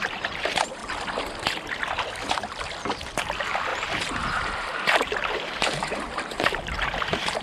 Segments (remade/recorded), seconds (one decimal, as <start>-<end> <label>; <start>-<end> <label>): 0.0-0.8 remade; 0.8-3.2 recorded; 3.2-7.4 remade